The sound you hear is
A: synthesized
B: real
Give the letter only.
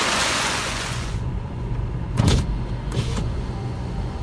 A